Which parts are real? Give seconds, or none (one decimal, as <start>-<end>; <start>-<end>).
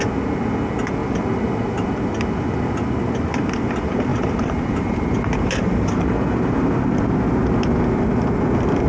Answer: 0.0-4.1; 6.7-8.9